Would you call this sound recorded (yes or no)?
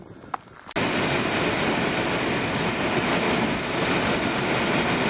yes